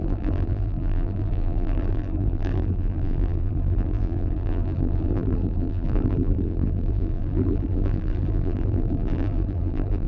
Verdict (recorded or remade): remade